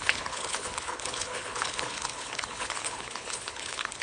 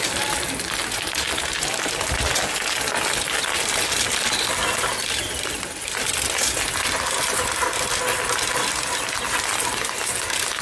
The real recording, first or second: second